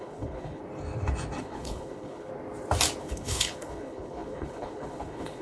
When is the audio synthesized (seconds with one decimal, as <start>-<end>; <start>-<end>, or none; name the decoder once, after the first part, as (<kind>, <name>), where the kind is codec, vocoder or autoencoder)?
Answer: 0.0-0.6 (codec, HILCodec); 1.4-2.3; 3.0-5.4